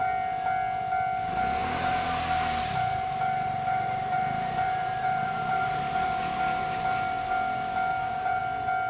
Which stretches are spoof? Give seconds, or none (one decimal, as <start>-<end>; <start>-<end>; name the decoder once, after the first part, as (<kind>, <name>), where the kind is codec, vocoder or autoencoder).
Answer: 1.6-6.1 (vocoder, BigVGAN v2); 7.9-8.4